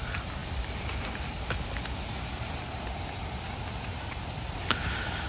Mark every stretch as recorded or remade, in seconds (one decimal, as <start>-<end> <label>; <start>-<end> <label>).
0.0-5.3 recorded